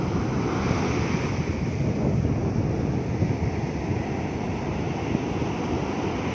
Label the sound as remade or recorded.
recorded